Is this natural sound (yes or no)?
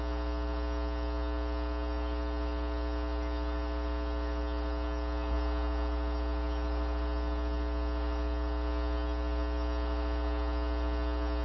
yes